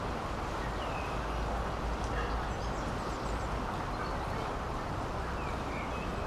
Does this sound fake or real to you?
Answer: real